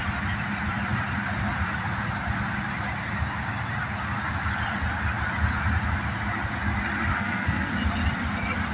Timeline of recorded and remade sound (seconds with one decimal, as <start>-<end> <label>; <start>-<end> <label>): 0.0-7.1 recorded; 7.1-7.7 remade; 7.7-8.7 recorded